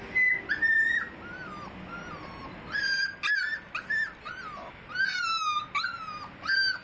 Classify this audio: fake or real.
real